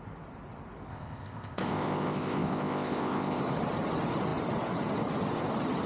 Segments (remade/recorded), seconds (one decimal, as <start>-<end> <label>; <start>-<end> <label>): 0.0-0.9 recorded; 0.9-3.4 remade; 3.4-5.9 recorded